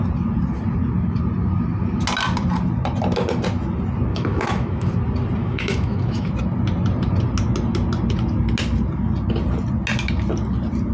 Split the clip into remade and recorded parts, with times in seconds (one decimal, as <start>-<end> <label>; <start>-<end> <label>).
0.0-4.1 recorded; 4.1-4.9 remade; 4.9-5.4 recorded; 5.4-6.3 remade; 6.3-10.9 recorded